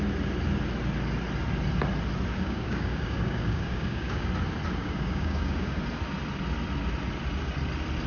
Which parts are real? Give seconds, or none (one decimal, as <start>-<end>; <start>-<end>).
0.0-2.3; 4.3-4.8; 5.7-8.1